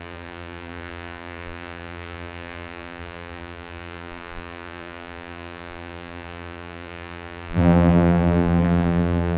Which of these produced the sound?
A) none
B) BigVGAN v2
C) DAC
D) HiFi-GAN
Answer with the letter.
B